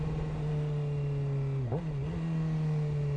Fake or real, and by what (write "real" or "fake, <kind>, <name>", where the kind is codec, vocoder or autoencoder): real